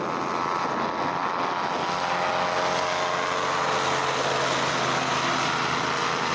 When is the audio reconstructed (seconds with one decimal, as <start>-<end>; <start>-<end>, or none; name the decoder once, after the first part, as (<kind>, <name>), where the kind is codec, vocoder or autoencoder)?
none